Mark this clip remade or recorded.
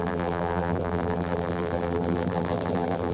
remade